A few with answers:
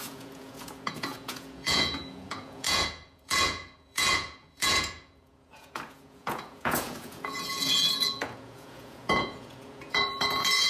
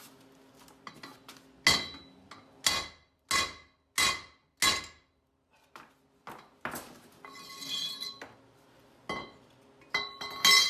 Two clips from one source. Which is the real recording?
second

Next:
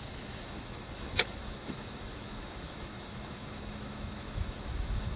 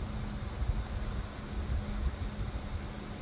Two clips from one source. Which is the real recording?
second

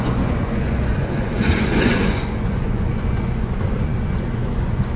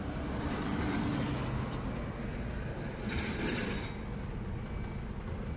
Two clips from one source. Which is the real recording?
second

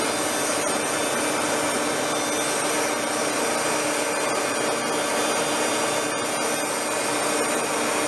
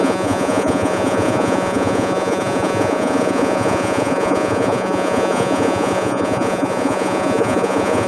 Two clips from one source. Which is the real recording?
first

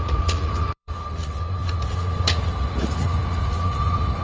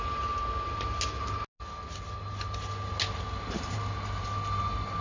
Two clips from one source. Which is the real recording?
second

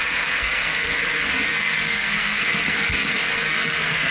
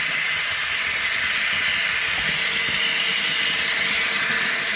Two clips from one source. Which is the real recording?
second